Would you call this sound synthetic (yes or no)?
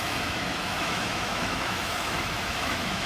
yes